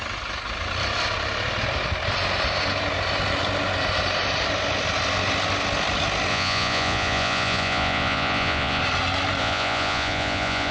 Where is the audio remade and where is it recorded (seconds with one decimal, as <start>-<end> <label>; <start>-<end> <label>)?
0.0-6.3 recorded; 6.3-8.8 remade; 8.8-9.4 recorded; 9.4-10.7 remade